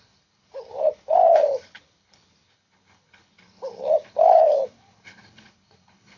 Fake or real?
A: fake